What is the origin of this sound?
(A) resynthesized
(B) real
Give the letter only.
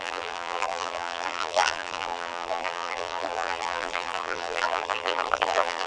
A